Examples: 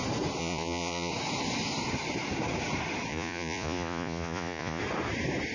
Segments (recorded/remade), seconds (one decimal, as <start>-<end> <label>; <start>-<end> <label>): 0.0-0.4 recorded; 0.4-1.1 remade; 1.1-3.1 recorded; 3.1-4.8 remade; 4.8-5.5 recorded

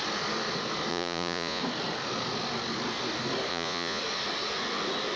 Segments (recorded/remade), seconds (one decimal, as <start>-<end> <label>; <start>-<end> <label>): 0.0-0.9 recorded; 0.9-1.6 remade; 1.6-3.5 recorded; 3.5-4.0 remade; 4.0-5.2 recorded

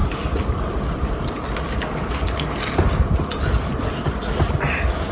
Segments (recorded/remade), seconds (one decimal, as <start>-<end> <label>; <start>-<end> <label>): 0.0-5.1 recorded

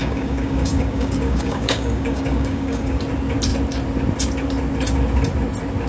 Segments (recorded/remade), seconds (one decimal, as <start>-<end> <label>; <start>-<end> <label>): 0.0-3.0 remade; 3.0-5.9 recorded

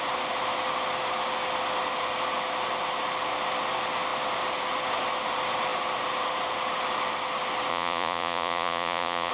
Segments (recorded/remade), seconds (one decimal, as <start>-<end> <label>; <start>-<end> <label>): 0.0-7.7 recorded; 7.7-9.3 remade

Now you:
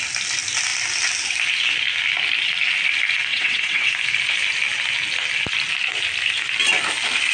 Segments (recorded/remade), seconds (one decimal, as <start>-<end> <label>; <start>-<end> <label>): 0.0-3.3 recorded; 3.3-3.9 remade; 3.9-7.3 recorded

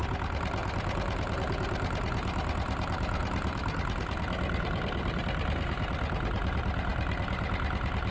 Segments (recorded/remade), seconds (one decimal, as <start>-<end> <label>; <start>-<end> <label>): 0.0-0.6 recorded; 0.6-1.4 remade; 1.4-3.2 recorded; 3.2-5.2 remade; 5.2-8.1 recorded